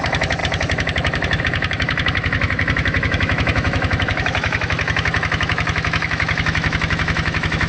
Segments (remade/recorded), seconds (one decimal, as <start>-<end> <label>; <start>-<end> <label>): 0.0-7.7 remade